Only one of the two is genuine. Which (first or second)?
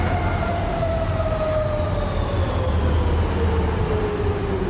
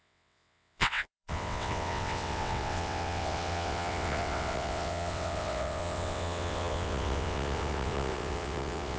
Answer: first